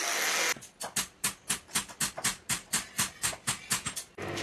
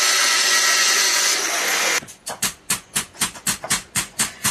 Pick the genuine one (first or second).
first